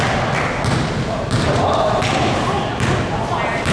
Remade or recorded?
recorded